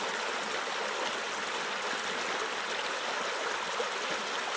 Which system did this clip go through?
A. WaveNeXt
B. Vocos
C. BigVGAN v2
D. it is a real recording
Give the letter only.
D